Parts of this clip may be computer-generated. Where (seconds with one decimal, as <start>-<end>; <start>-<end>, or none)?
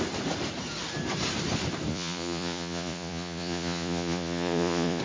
1.9-5.0